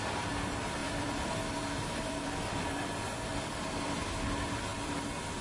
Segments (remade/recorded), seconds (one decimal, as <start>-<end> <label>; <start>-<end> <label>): 0.0-0.8 recorded; 0.8-4.0 remade; 4.0-4.7 recorded; 4.7-5.4 remade